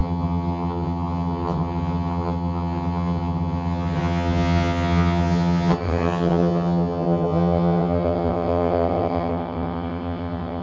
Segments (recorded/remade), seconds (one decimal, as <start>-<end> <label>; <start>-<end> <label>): 0.0-10.6 remade